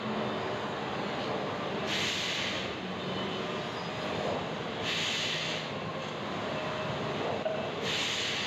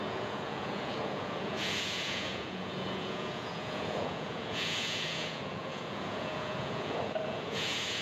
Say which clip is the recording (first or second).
first